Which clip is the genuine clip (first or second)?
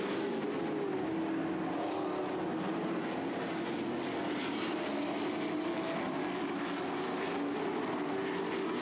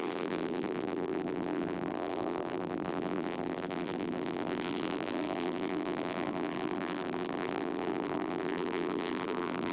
first